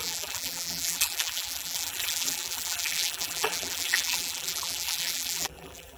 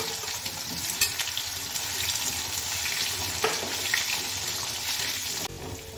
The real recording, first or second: second